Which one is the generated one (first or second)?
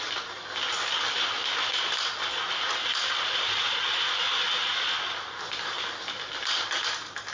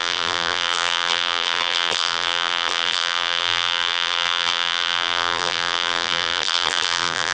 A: second